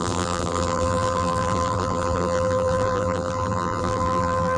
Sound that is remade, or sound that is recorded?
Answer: remade